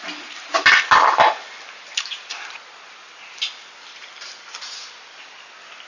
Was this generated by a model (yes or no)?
no